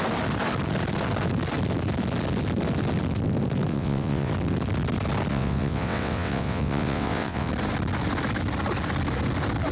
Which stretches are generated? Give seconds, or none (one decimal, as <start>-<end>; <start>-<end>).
3.7-4.3; 5.3-7.5